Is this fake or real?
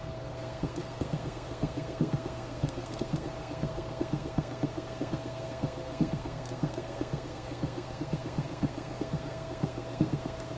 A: fake